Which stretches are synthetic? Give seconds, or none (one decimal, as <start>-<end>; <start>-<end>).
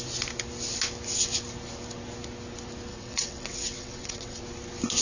2.9-4.4